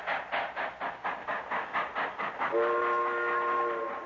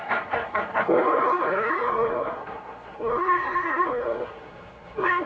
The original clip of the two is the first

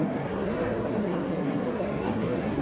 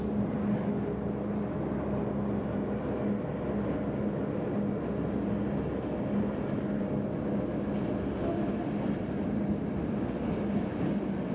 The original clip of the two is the second